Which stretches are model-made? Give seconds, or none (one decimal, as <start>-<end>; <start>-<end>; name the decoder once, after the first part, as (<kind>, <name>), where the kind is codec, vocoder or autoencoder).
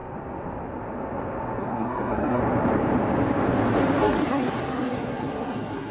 1.6-2.4 (codec, SNAC); 4.0-5.9